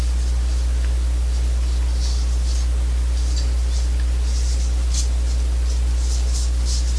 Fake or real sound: real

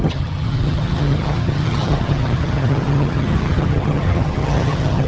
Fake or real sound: fake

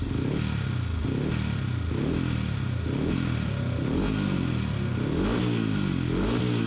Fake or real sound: real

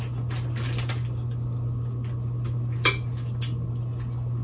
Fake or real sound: real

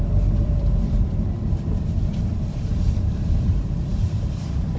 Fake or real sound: fake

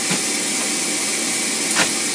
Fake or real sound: real